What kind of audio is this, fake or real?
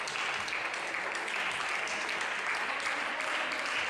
real